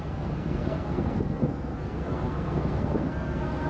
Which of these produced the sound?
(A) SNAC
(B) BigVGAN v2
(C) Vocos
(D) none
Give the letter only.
A